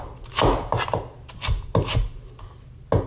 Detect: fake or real real